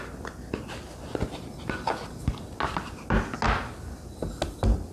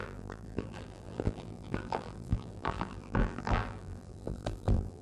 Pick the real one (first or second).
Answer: first